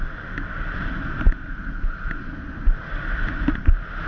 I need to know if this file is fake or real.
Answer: real